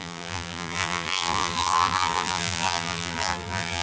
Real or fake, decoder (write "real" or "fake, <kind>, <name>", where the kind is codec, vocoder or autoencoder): fake, vocoder, BigVGAN v2